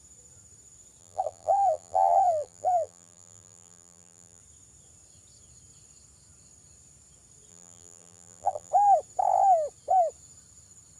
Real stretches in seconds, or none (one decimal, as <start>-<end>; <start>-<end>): 0.0-1.0; 4.4-7.5; 8.7-11.0